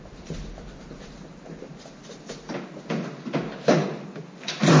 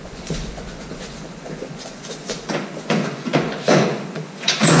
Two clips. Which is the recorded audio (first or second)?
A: first